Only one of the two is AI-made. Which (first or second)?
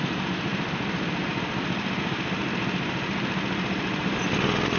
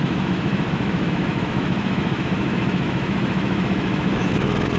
second